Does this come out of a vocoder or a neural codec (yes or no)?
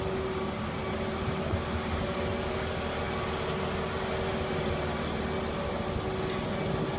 no